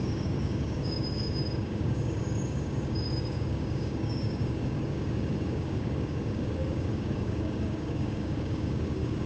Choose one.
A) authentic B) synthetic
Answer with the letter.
B